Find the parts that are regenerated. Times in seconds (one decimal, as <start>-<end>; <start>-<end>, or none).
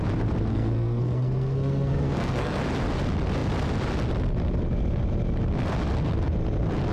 0.5-2.6